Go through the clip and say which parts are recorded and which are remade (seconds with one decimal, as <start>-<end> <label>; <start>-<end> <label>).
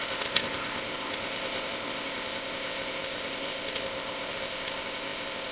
0.0-5.5 remade